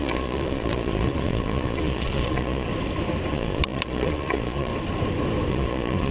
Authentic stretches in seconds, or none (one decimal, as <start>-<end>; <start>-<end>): 2.7-3.3; 4.7-5.5